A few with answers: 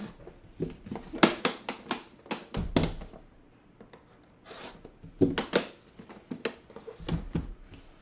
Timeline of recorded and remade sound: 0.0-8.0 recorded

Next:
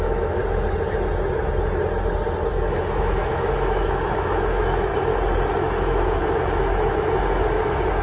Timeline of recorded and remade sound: 0.0-0.4 remade; 0.4-2.5 recorded; 2.5-4.9 remade; 4.9-5.6 recorded; 5.6-8.0 remade

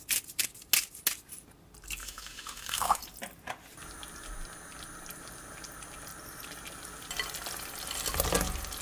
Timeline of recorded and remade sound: 0.0-2.0 recorded; 2.0-3.0 remade; 3.0-8.8 recorded

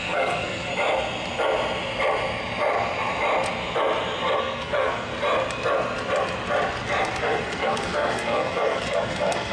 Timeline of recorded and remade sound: 0.0-0.7 remade; 0.7-4.4 recorded; 4.4-5.1 remade; 5.1-7.2 recorded; 7.2-9.5 remade